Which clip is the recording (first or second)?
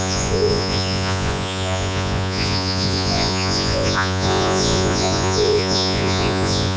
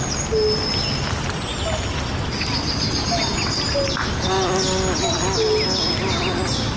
second